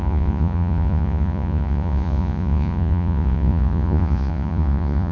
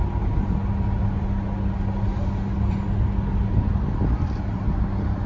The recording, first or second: second